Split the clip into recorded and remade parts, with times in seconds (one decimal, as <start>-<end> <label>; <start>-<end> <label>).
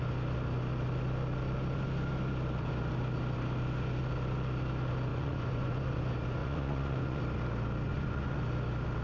0.0-5.1 recorded; 5.1-6.0 remade; 6.0-6.4 recorded; 6.4-7.2 remade; 7.2-7.9 recorded; 7.9-8.4 remade; 8.4-9.0 recorded